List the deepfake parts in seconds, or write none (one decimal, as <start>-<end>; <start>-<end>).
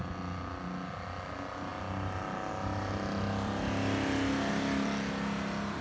none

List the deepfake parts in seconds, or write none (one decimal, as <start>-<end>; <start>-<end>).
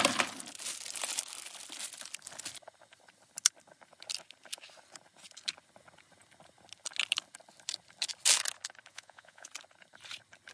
8.9-9.5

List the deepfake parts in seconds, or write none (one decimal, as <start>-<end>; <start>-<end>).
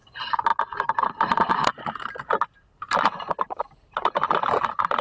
none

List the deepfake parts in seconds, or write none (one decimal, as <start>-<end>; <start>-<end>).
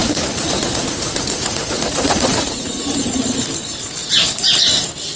0.0-3.1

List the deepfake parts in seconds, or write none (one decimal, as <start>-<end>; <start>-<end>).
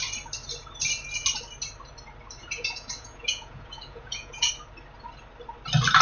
2.4-4.5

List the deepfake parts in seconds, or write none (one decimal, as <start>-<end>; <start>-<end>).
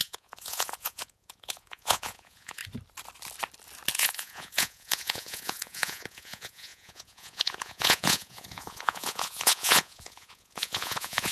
0.0-2.6; 3.9-11.3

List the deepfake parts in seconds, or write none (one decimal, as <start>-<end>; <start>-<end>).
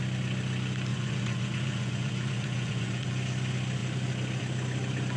0.9-3.1